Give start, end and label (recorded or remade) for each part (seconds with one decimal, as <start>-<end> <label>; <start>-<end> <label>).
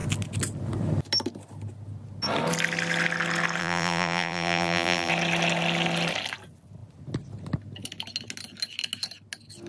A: 0.0-3.6 recorded; 3.6-5.1 remade; 5.1-9.7 recorded